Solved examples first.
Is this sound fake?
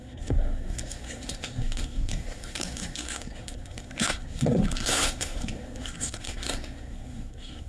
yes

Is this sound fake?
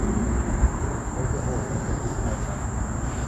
no